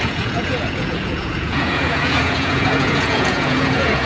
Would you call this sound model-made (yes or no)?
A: yes